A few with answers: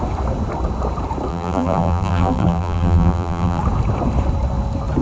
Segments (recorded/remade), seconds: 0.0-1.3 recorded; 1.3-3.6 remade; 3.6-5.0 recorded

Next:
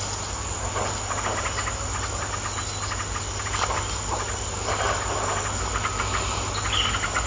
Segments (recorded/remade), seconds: 0.0-7.3 recorded

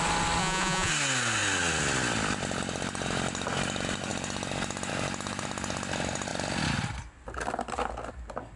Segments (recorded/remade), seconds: 0.0-0.4 recorded; 0.4-0.9 remade; 0.9-8.6 recorded

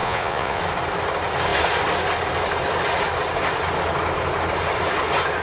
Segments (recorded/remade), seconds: 0.0-0.6 remade; 0.6-5.4 recorded

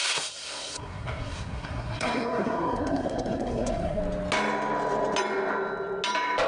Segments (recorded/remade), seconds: 0.0-4.0 remade; 4.0-6.5 recorded

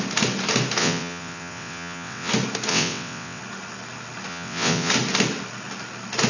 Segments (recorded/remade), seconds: 0.0-0.8 recorded; 0.8-2.3 remade; 2.3-2.7 recorded; 2.7-3.4 remade; 3.4-4.3 recorded; 4.3-4.9 remade; 4.9-6.3 recorded